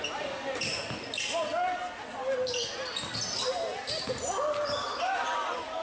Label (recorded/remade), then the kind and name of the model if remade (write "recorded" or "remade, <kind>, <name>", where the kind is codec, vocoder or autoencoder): recorded